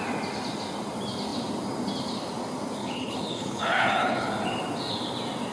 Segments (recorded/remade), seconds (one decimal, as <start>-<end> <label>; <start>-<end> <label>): 0.0-2.8 recorded; 2.8-4.3 remade; 4.3-5.5 recorded